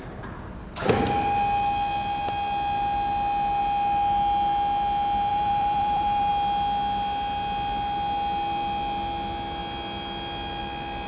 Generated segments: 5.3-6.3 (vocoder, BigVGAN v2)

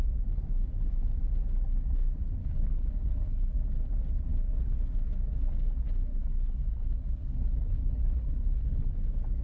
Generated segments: 2.4-3.6 (codec, HILCodec); 6.1-8.9

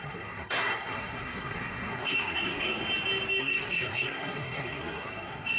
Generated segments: 0.0-2.8 (codec, SNAC); 3.4-5.6

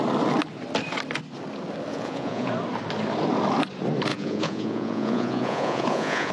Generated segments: 1.9-2.5 (vocoder, Vocos); 4.1-6.3